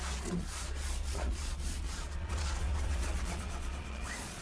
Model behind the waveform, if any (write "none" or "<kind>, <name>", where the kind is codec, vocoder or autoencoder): vocoder, Vocos